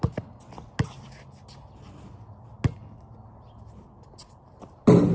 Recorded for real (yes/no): yes